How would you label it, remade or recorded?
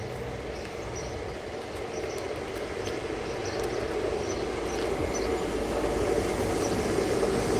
recorded